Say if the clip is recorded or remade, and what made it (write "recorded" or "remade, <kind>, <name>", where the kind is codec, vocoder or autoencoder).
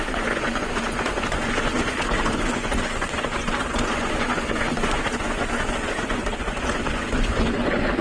remade, vocoder, Vocos